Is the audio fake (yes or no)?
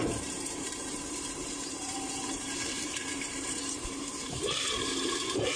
yes